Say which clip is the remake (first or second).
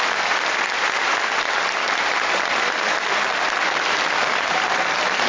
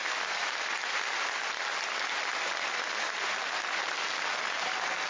first